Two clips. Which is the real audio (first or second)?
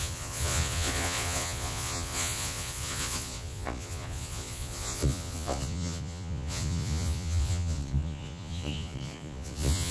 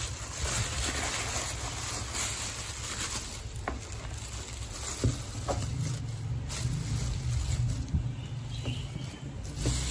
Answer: second